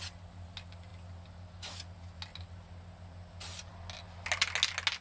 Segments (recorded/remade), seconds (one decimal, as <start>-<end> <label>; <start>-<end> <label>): 0.0-5.0 recorded